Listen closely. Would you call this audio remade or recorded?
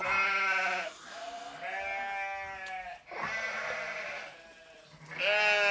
recorded